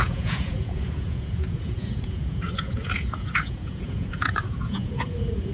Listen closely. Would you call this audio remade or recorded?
remade